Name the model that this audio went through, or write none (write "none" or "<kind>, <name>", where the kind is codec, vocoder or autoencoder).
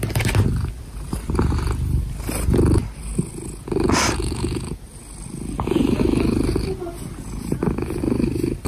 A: none